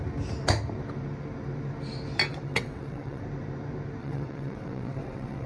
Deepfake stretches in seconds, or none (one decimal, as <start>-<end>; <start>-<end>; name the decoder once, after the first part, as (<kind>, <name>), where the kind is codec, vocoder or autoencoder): 2.3-3.2 (vocoder, WaveNeXt); 4.0-5.5